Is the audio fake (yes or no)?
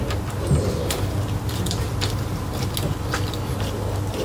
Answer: no